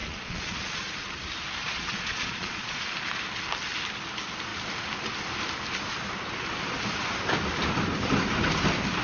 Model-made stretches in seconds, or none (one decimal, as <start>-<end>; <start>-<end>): 0.0-0.8; 1.6-2.8